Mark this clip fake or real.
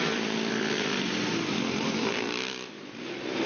fake